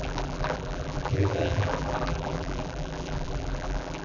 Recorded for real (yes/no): no